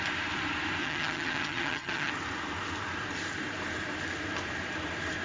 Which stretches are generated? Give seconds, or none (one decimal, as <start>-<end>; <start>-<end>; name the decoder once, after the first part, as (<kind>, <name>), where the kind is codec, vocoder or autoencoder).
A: 0.8-2.1 (vocoder, HiFi-GAN)